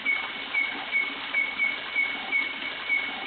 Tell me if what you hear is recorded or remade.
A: recorded